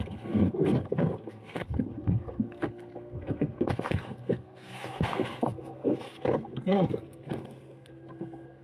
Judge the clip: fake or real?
fake